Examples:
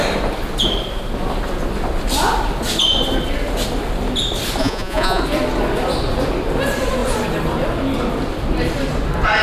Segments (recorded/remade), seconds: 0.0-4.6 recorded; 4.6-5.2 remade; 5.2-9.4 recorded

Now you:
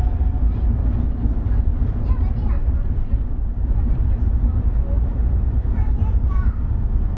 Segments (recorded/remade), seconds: 0.0-1.7 recorded; 1.7-2.2 remade; 2.2-2.6 recorded; 2.6-5.8 remade; 5.8-7.2 recorded

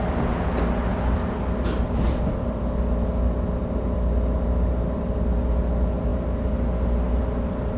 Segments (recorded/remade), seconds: 0.0-7.8 recorded

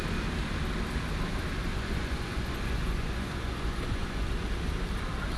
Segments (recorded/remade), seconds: 0.0-1.7 recorded; 1.7-4.3 remade; 4.3-5.4 recorded

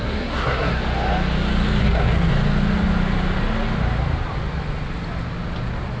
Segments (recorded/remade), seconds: 0.0-0.7 remade; 0.7-1.8 recorded; 1.8-2.3 remade; 2.3-6.0 recorded

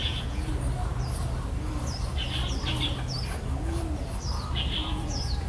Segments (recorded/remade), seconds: 0.0-0.5 remade; 0.5-4.8 recorded; 4.8-5.5 remade

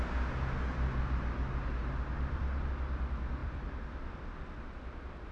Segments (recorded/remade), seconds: 0.0-1.8 recorded; 1.8-2.7 remade; 2.7-3.4 recorded; 3.4-5.3 remade

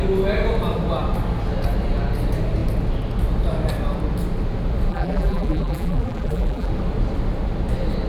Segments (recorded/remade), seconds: 0.0-4.9 recorded; 4.9-6.7 remade; 6.7-8.1 recorded